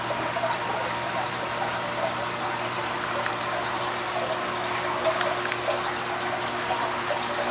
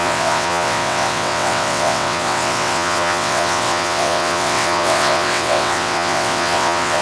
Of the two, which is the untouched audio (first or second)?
first